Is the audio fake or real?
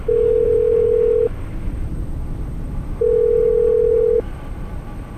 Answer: fake